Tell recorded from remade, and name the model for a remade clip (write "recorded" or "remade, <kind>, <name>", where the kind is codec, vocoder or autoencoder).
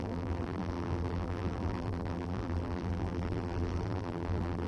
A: remade, vocoder, BigVGAN v2